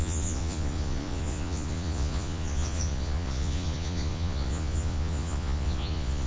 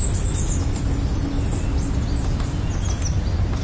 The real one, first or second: second